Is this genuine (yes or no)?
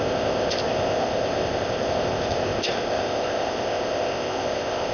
no